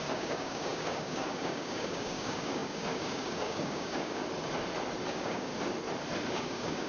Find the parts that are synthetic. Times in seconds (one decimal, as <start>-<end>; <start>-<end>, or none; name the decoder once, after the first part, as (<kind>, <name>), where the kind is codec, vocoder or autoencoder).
0.0-4.2 (codec, DAC); 5.1-5.5; 6.3-6.9